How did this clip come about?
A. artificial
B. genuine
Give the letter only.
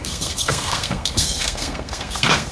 A